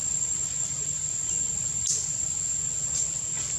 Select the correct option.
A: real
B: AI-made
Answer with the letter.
A